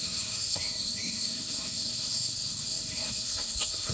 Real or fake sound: fake